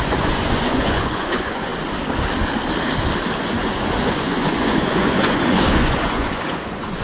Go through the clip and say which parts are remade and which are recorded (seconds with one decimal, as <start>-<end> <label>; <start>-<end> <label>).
0.0-1.7 remade; 1.7-3.4 recorded; 3.4-7.0 remade